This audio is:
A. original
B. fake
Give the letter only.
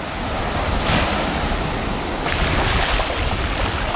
A